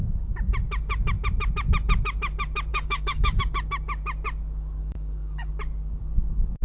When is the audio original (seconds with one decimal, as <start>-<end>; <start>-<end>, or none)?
0.0-2.7; 3.4-4.8; 5.5-6.6